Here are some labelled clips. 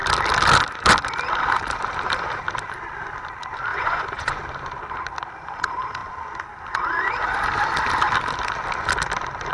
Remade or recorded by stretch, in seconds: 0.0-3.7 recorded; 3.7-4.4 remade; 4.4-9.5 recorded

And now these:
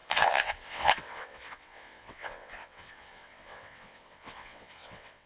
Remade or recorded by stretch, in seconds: 0.0-5.3 remade

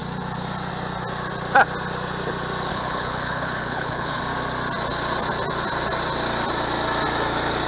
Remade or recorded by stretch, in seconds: 0.0-2.7 recorded; 2.7-4.2 remade; 4.2-7.7 recorded